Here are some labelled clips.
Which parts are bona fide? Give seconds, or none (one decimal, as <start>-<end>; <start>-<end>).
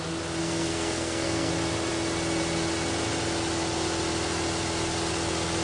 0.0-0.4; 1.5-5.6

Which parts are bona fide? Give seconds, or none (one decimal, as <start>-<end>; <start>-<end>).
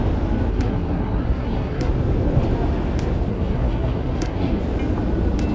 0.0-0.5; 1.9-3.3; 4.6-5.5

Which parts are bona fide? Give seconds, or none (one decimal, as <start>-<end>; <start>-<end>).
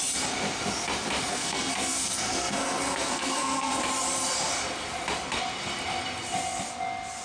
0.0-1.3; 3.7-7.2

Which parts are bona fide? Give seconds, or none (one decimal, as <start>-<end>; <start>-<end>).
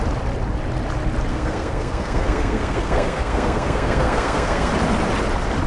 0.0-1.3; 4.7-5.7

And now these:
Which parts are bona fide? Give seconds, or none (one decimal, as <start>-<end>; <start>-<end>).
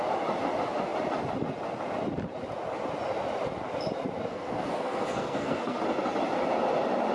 0.0-4.3; 5.8-7.1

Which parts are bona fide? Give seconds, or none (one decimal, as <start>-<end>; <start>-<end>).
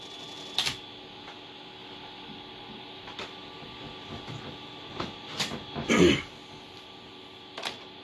0.0-8.0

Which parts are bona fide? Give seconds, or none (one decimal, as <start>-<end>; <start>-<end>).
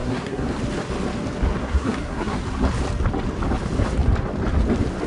0.5-1.6; 2.4-5.1